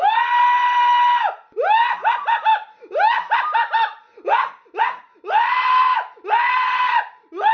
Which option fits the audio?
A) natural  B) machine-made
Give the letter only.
A